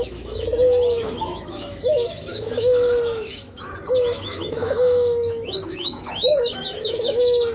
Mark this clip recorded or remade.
remade